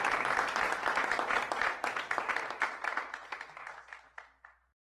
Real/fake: real